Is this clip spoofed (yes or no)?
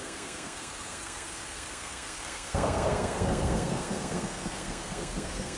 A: yes